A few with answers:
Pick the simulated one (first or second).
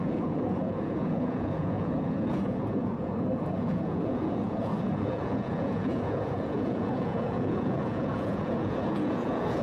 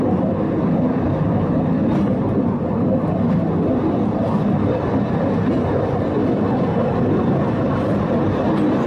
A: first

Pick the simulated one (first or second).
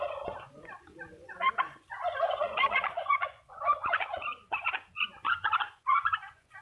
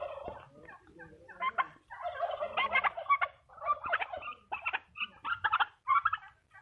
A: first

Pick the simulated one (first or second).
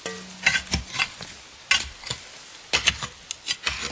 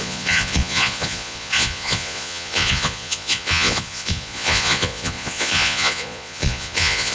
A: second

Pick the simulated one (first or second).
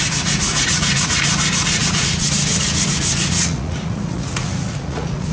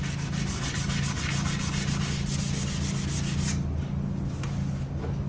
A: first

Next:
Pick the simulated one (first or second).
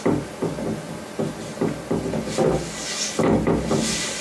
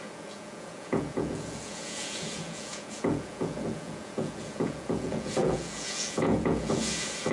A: second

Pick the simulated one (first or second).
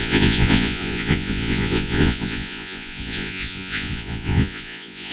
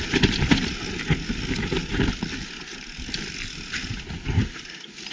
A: first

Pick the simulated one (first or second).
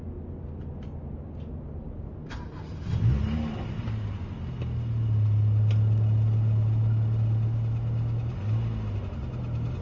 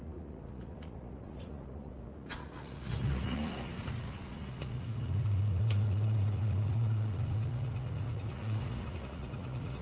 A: second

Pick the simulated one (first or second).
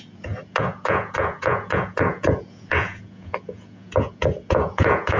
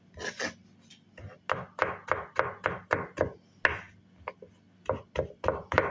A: first